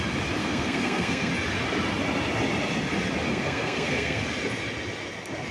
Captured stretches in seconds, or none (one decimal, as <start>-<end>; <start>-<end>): 0.0-0.4; 1.3-3.3; 4.2-5.5